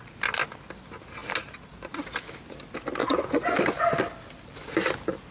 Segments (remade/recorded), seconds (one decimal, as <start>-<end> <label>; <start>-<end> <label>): 0.0-3.0 recorded; 3.0-3.5 remade; 3.5-5.3 recorded